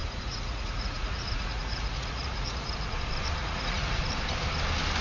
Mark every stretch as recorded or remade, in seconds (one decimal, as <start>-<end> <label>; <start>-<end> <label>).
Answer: 0.0-3.0 remade; 3.0-3.4 recorded; 3.4-4.0 remade; 4.0-5.0 recorded